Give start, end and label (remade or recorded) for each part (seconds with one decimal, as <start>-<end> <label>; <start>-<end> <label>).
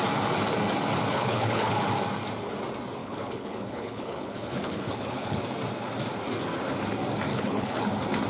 0.0-1.1 recorded; 1.1-1.7 remade; 1.7-3.0 recorded; 3.0-5.4 remade; 5.4-7.3 recorded; 7.3-7.8 remade; 7.8-8.3 recorded